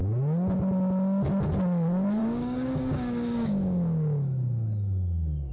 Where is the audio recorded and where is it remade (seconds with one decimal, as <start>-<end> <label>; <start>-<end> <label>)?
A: 0.0-2.2 recorded; 2.2-5.5 remade